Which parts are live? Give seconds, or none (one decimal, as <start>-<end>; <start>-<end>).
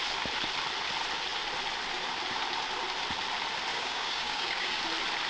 0.0-3.7; 4.8-5.3